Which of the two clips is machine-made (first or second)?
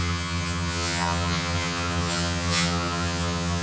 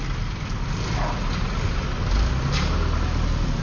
first